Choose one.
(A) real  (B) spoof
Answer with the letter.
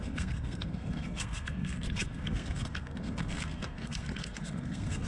B